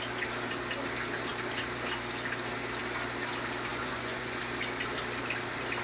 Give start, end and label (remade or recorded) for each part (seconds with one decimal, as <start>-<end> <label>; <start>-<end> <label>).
0.0-3.7 recorded; 3.7-4.4 remade; 4.4-5.8 recorded